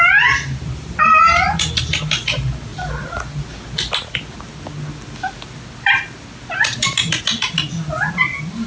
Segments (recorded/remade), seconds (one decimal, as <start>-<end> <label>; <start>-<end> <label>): 0.0-8.7 recorded